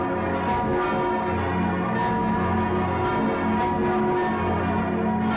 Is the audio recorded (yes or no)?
yes